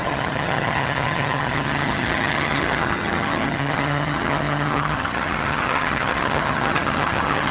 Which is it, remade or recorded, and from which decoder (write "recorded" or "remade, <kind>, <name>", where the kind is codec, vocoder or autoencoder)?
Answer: remade, vocoder, HiFi-GAN